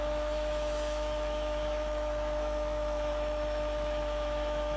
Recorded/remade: remade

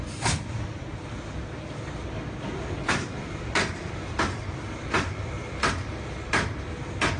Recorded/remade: recorded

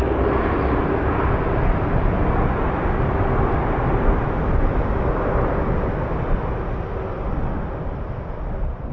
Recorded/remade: recorded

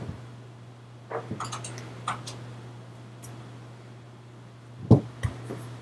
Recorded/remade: recorded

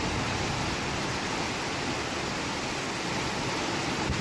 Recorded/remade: recorded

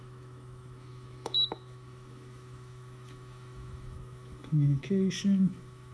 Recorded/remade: remade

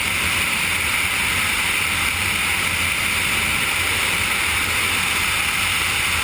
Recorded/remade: recorded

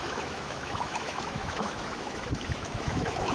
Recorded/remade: remade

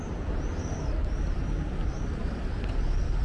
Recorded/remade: recorded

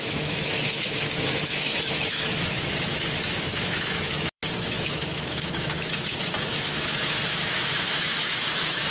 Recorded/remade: remade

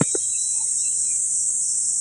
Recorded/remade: recorded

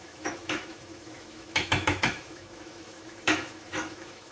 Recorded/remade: remade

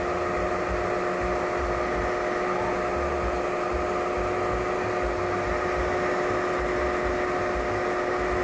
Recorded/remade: recorded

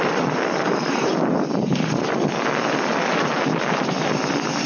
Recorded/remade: recorded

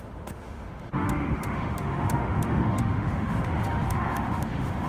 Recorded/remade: remade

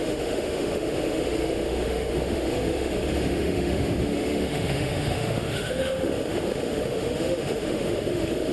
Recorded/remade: remade